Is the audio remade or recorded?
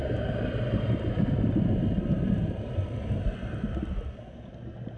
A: recorded